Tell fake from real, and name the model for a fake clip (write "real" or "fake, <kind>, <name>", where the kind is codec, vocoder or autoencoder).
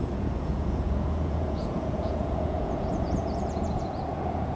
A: fake, vocoder, Vocos